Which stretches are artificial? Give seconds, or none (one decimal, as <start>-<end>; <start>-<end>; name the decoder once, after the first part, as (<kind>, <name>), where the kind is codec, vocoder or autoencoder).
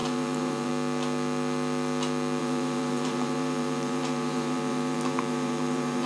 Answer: 0.0-0.7 (vocoder, BigVGAN v2); 2.4-6.1